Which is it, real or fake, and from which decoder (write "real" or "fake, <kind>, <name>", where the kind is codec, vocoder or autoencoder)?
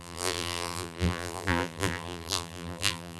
fake, vocoder, BigVGAN v2